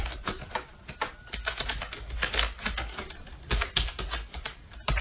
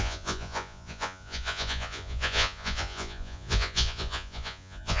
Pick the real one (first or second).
first